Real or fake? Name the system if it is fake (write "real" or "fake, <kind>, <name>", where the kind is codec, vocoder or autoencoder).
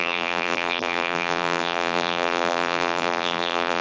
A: fake, vocoder, BigVGAN v2